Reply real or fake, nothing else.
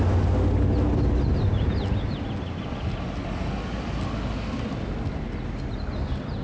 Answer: real